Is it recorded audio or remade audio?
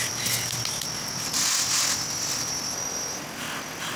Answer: recorded